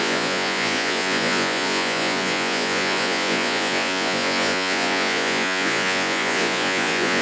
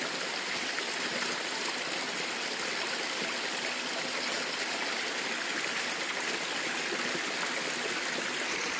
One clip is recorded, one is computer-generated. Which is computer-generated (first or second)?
first